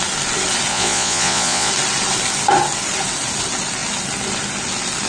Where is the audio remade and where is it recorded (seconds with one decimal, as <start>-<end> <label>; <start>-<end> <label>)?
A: 0.0-0.7 recorded; 0.7-1.7 remade; 1.7-5.1 recorded